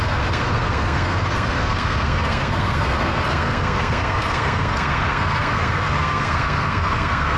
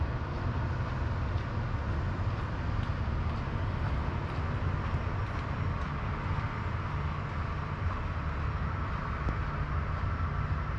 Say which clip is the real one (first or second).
second